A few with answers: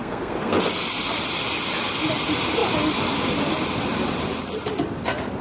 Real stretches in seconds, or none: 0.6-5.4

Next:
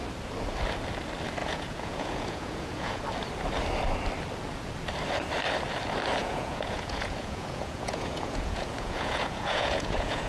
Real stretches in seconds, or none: 0.0-1.4; 3.0-6.2

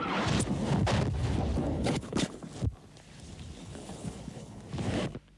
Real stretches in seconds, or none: 0.0-1.6; 2.4-3.6; 4.6-5.4

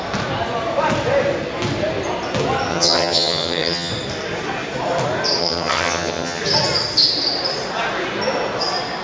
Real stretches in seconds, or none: 0.0-2.7; 3.9-5.4; 6.4-9.0